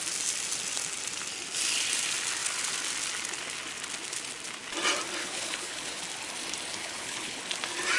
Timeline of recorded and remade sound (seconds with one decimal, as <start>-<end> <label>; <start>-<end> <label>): 0.0-5.2 recorded; 5.2-6.0 remade; 6.0-6.8 recorded; 6.8-7.4 remade; 7.4-8.0 recorded